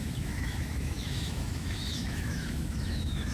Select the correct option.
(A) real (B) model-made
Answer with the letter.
B